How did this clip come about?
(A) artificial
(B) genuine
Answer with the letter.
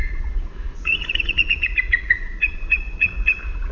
A